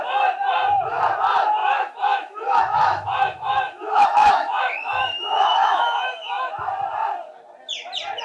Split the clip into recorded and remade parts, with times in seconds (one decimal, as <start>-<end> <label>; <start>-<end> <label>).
0.0-1.6 recorded; 1.6-6.5 remade; 6.5-8.2 recorded